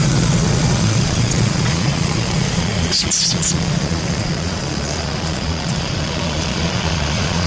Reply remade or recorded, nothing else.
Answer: remade